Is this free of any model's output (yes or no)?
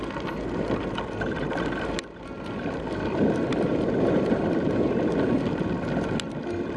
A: yes